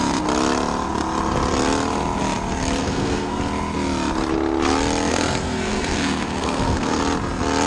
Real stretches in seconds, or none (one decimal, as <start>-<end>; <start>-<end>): 0.0-2.8; 3.4-5.1; 7.0-7.7